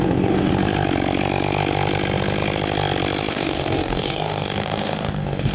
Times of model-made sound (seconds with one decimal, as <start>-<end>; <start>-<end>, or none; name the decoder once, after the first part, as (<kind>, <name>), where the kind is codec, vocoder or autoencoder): 0.0-0.5 (codec, DAC); 3.3-5.5